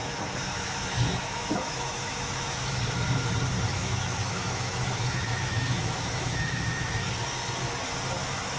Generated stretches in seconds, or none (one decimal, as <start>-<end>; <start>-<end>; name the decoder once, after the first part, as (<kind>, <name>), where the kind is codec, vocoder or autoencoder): 0.0-2.8 (autoencoder, DAC-VAE); 3.7-7.1